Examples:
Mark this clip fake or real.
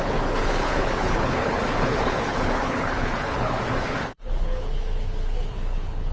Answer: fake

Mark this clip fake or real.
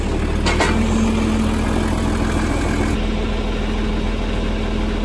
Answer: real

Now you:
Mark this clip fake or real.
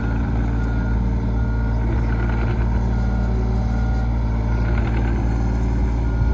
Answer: real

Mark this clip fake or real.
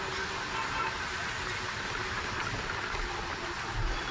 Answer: real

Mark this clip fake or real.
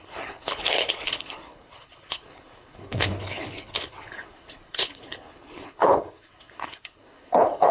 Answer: fake